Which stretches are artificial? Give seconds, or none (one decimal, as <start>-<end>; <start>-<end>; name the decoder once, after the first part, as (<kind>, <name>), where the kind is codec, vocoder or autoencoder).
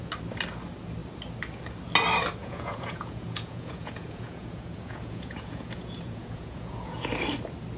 2.4-7.1 (vocoder, Vocos)